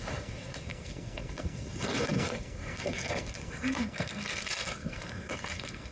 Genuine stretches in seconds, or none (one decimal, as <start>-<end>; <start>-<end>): none